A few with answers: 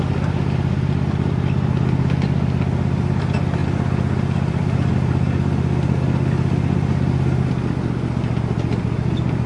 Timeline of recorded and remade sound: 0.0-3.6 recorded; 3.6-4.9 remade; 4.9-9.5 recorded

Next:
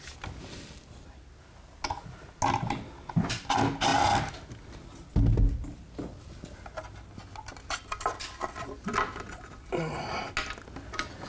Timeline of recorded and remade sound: 0.0-11.3 recorded

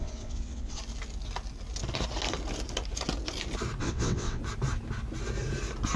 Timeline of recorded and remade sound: 0.0-0.8 remade; 0.8-3.8 recorded; 3.8-4.4 remade; 4.4-6.0 recorded

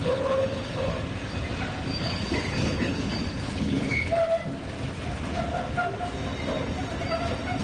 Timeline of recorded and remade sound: 0.0-0.9 remade; 0.9-2.0 recorded; 2.0-4.2 remade; 4.2-7.6 recorded

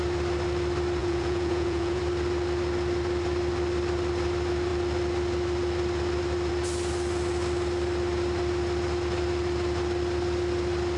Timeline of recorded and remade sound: 0.0-1.0 recorded; 1.0-2.0 remade; 2.0-11.0 recorded

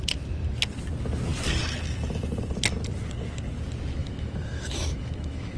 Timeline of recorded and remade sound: 0.0-4.0 recorded; 4.0-5.6 remade

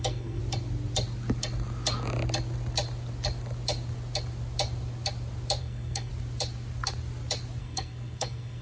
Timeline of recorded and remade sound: 0.0-0.4 remade; 0.4-5.6 recorded; 5.6-6.1 remade; 6.1-7.6 recorded; 7.6-8.6 remade

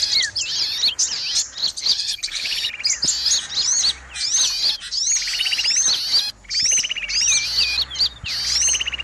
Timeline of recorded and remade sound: 0.0-1.6 recorded; 1.6-2.7 remade; 2.7-9.0 recorded